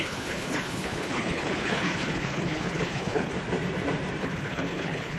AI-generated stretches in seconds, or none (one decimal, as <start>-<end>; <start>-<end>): 0.0-3.3; 4.2-5.2